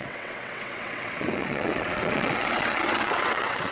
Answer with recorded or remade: remade